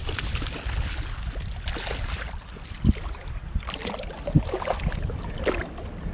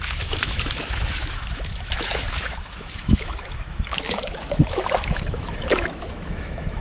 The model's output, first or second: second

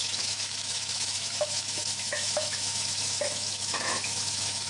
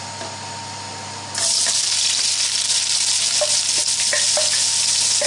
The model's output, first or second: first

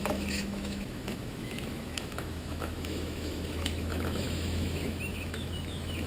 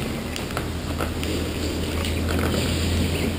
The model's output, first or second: first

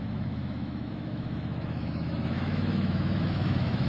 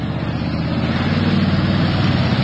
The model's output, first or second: first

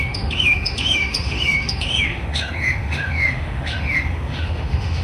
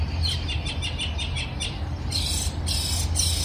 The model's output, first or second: first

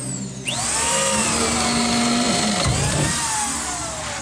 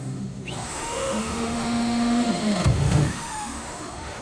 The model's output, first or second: second